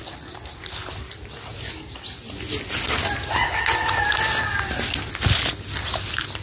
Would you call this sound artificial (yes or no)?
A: no